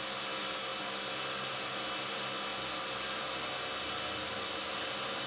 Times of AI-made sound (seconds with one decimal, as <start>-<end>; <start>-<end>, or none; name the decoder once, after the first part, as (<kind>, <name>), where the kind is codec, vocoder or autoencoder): none

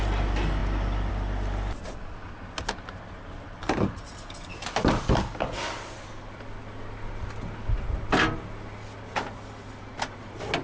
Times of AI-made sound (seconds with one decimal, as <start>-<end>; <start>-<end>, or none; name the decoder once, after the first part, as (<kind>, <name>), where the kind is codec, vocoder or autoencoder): none

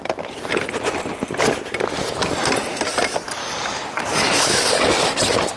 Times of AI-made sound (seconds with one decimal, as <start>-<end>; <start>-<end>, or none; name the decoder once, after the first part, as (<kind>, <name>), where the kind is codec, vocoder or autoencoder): 3.4-4.7 (codec, DAC)

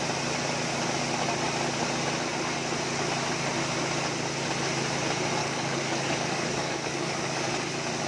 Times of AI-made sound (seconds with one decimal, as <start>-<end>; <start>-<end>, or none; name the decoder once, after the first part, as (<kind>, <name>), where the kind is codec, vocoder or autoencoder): 5.4-7.5 (codec, DAC)

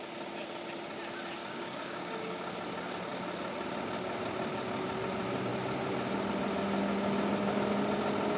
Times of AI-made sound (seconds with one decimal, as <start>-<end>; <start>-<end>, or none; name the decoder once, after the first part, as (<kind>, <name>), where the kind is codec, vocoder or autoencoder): 1.4-2.5 (codec, DAC)

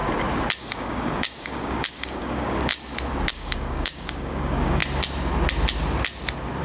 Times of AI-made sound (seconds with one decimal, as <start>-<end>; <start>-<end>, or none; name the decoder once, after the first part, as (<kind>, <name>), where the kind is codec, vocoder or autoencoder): 0.6-2.7 (codec, DAC); 3.3-4.8